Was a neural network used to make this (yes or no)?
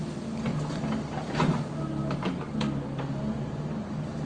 no